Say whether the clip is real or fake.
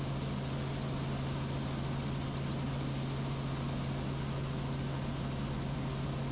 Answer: real